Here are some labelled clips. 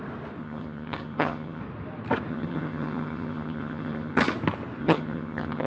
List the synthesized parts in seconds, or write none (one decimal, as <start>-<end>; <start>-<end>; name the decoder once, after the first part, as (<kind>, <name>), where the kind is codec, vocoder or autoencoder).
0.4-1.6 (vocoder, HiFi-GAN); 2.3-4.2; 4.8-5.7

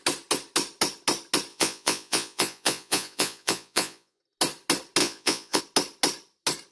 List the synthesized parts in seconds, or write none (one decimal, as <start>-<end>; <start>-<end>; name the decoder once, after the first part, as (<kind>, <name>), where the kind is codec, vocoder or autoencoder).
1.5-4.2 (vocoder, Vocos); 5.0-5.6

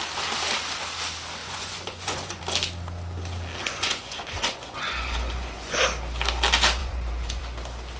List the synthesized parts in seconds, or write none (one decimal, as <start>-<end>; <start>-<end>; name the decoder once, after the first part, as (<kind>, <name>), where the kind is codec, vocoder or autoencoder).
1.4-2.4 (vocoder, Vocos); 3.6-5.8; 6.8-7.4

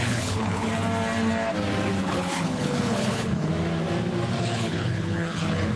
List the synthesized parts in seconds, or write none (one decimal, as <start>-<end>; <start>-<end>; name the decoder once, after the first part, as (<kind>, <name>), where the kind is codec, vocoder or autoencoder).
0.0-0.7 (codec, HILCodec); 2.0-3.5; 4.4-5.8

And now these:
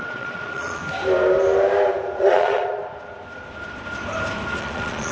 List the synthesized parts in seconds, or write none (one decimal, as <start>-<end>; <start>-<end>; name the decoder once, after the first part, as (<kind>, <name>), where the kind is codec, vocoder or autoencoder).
0.0-0.8 (vocoder, Vocos); 2.2-2.8; 4.6-5.1

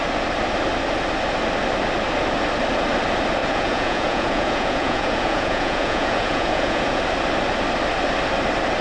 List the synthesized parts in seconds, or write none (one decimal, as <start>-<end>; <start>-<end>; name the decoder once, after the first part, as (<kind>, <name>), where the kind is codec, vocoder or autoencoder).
3.4-7.0 (vocoder, Vocos)